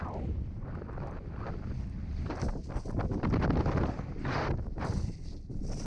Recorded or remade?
recorded